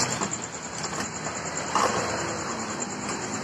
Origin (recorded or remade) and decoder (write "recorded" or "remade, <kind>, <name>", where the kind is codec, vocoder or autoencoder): recorded